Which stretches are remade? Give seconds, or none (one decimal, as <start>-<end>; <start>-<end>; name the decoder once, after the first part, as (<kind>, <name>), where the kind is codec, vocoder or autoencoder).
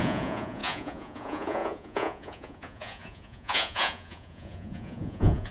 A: 0.0-5.5 (vocoder, Vocos)